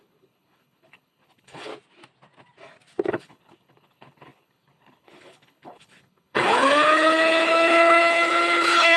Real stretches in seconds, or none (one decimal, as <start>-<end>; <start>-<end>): 1.7-3.1